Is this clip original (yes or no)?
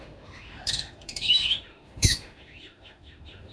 no